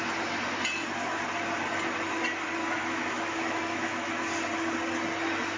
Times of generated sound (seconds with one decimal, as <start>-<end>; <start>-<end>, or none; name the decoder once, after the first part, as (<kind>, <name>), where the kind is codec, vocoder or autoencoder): 2.8-4.2 (autoencoder, DAC-VAE)